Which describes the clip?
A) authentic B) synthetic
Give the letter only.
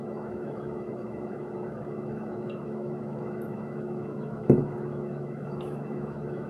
B